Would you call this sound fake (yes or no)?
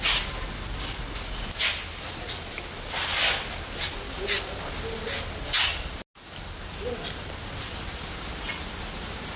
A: no